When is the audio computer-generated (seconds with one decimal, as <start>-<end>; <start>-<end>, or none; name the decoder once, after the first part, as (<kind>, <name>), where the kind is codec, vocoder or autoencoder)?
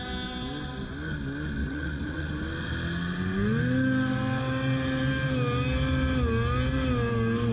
1.6-2.3 (vocoder, Vocos)